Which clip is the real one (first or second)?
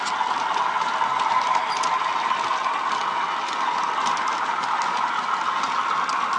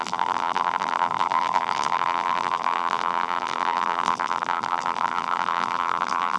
first